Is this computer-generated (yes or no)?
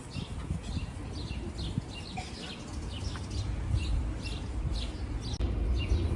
no